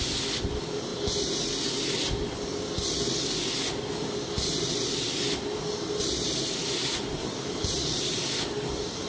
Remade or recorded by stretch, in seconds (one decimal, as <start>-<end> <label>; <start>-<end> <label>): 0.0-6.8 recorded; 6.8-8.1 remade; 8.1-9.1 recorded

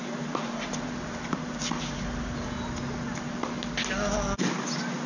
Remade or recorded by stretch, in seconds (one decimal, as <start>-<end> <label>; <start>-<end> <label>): 0.0-1.6 remade; 1.6-5.1 recorded

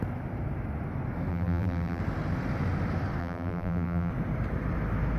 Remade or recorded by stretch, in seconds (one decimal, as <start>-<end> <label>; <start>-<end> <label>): 0.0-1.3 recorded; 1.3-2.0 remade; 2.0-3.2 recorded; 3.2-4.1 remade; 4.1-5.2 recorded

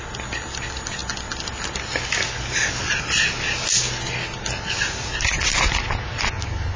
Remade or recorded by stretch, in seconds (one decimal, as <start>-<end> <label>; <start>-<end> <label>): 0.0-6.8 recorded

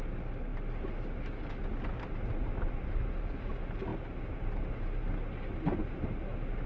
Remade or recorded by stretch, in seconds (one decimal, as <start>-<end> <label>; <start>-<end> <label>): 0.0-6.7 recorded